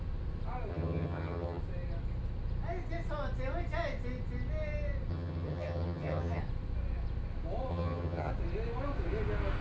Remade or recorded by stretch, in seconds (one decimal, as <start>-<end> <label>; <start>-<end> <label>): 0.0-0.7 recorded; 0.7-1.6 remade; 1.6-5.1 recorded; 5.1-6.4 remade; 6.4-7.7 recorded; 7.7-8.3 remade; 8.3-9.6 recorded